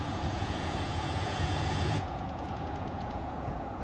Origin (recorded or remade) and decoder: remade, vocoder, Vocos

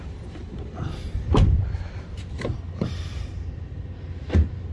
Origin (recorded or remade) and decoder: recorded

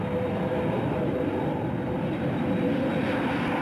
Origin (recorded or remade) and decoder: recorded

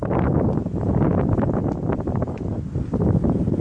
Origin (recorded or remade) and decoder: recorded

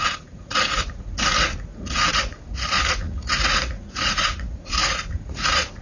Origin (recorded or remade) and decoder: remade, vocoder, Vocos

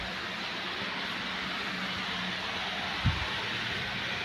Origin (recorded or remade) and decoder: recorded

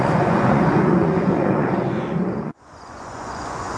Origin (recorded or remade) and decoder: remade, vocoder, Vocos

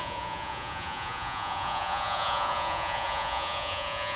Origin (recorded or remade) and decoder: remade, vocoder, Vocos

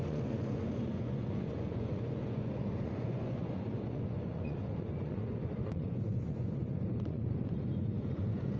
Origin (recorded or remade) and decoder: remade, vocoder, Vocos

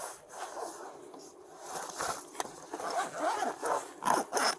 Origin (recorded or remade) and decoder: recorded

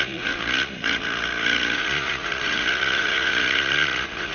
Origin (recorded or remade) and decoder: remade, vocoder, Vocos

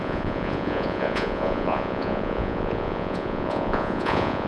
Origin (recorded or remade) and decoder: remade, vocoder, Vocos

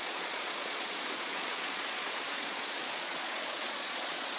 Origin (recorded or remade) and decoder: remade, vocoder, Vocos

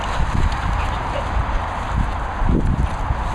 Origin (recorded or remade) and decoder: recorded